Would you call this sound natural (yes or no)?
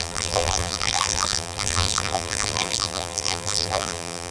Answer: no